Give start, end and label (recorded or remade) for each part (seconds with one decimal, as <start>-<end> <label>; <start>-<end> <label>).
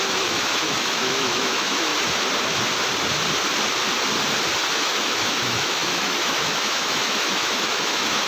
0.0-1.9 remade; 1.9-4.7 recorded; 4.7-8.3 remade